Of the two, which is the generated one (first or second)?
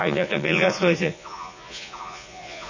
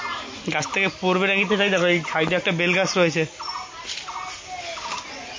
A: first